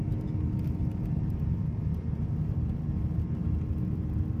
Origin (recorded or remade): recorded